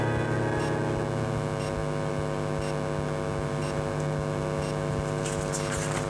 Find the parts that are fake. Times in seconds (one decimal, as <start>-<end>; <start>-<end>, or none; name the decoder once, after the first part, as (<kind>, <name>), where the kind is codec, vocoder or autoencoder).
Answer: none